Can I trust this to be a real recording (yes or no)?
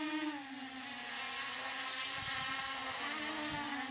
yes